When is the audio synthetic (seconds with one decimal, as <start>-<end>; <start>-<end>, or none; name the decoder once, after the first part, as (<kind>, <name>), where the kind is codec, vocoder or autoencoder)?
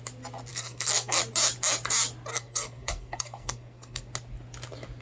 0.5-1.2 (codec, SNAC); 2.3-4.1